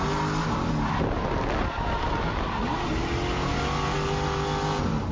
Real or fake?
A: real